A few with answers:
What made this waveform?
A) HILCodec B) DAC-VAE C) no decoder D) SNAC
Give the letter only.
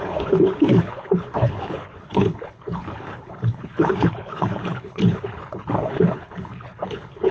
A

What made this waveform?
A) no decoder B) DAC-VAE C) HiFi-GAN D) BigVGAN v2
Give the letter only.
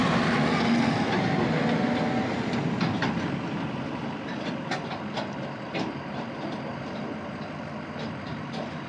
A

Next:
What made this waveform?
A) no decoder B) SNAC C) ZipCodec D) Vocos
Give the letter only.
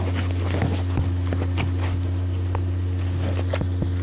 A